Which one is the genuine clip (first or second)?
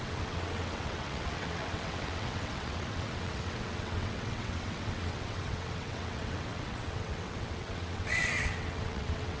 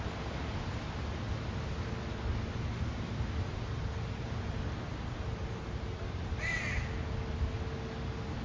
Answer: second